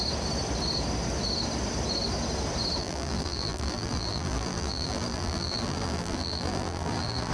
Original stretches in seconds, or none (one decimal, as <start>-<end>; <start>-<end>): 0.0-2.8